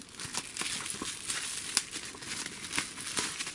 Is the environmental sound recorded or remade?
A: recorded